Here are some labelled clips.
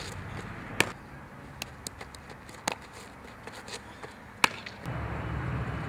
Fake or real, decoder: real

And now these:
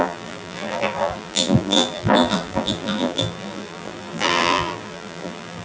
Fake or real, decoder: fake, vocoder, BigVGAN v2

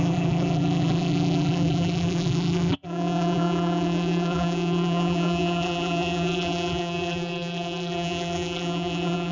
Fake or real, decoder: fake, vocoder, BigVGAN v2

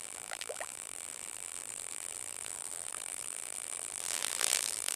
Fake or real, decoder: fake, vocoder, BigVGAN v2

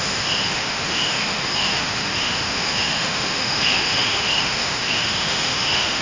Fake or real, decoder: fake, autoencoder, DAC-VAE